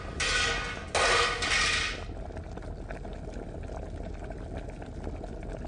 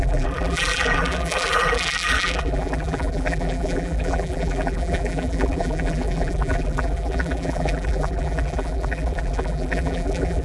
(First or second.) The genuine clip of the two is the first